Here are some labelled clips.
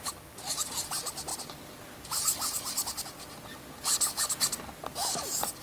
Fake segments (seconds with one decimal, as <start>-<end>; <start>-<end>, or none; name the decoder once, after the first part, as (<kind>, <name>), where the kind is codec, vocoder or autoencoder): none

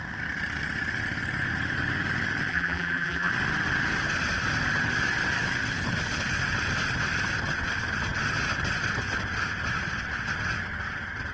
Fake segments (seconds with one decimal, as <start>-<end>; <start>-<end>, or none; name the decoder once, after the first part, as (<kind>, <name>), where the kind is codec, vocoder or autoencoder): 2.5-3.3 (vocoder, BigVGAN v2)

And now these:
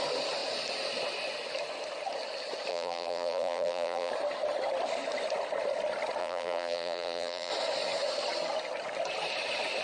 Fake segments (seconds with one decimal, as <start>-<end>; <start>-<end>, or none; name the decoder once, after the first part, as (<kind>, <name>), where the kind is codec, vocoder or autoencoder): 2.7-4.1 (vocoder, BigVGAN v2); 6.2-7.5